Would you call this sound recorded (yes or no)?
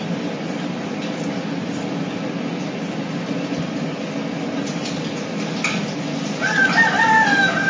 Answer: yes